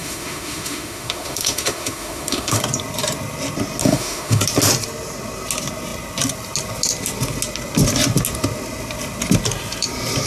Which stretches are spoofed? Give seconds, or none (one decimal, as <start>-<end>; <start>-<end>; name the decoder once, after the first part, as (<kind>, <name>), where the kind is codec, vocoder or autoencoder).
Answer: 0.0-2.6 (autoencoder, DAC-VAE); 3.8-4.4